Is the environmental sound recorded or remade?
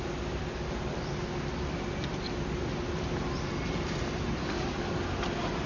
recorded